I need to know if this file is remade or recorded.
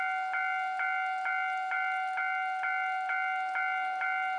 recorded